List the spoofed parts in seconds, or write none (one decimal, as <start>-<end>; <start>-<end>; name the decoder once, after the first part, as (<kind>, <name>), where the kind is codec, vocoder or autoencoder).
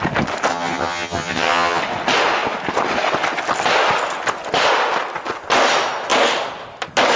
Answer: 0.5-1.8 (vocoder, HiFi-GAN)